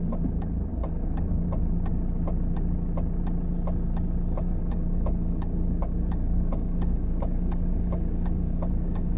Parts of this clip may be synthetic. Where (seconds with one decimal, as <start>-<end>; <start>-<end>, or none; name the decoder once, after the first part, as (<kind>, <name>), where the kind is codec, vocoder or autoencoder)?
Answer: 0.0-1.9 (codec, DAC); 4.4-9.2